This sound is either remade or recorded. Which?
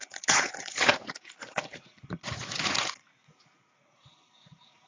remade